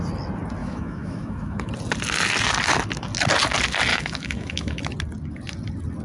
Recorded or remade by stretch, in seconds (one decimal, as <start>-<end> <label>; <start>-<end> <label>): 0.0-0.6 recorded; 0.6-1.7 remade; 1.7-3.9 recorded; 3.9-4.8 remade; 4.8-6.0 recorded